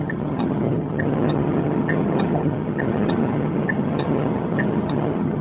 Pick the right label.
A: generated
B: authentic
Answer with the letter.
A